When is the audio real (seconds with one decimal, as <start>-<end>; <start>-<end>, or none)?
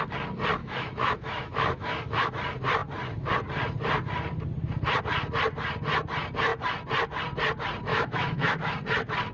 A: 0.0-0.6; 2.3-7.9; 8.7-9.3